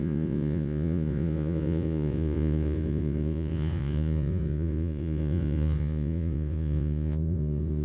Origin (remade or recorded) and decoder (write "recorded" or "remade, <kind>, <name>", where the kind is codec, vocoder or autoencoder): remade, vocoder, Vocos